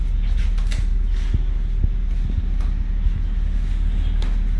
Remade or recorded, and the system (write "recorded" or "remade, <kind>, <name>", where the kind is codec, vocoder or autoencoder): recorded